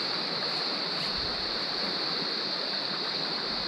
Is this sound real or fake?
fake